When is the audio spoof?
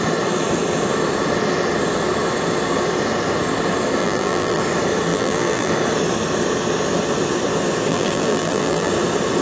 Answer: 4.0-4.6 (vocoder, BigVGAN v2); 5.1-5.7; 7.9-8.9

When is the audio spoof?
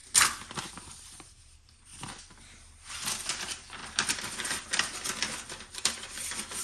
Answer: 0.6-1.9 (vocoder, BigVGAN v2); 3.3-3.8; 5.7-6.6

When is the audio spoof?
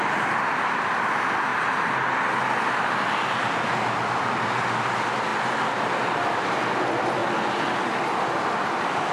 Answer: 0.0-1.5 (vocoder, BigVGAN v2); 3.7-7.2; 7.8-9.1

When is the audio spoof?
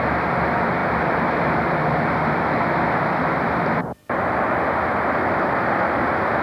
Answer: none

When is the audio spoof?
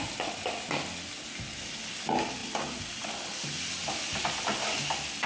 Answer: 2.4-3.1 (vocoder, BigVGAN v2); 3.8-4.8